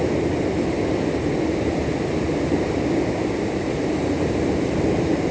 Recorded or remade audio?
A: recorded